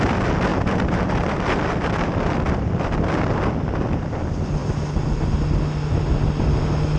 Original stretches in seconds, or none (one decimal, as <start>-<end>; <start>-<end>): 0.0-0.5; 3.1-7.0